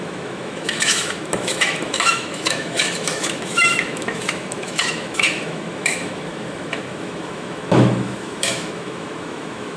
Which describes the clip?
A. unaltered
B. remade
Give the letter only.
B